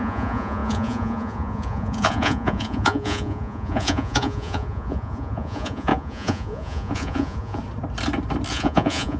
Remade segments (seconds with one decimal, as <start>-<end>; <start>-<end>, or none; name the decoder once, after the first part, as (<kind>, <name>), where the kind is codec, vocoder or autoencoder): 0.0-7.6 (vocoder, Vocos); 8.5-9.2